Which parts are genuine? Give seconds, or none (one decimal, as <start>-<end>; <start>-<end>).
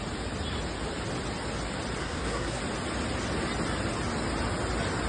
0.0-2.0; 2.6-5.1